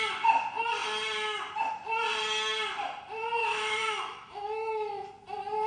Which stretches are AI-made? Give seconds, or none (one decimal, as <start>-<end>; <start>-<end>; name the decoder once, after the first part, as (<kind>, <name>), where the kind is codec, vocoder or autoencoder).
3.4-5.1 (autoencoder, DAC-VAE)